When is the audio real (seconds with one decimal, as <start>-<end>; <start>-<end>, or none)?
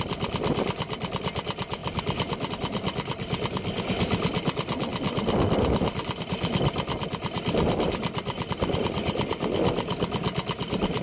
0.0-11.0